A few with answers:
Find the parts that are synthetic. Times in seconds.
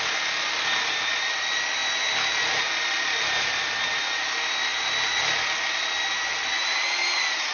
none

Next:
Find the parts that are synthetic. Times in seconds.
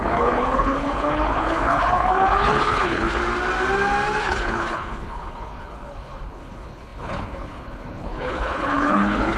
0.0-3.2 (codec, HILCodec); 4.2-9.4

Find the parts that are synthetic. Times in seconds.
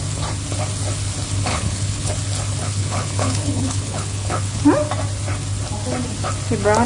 1.5-2.1 (codec, HILCodec); 2.6-4.6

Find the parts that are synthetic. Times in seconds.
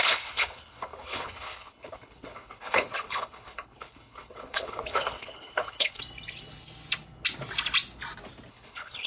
0.0-6.0 (codec, HILCodec); 8.5-9.1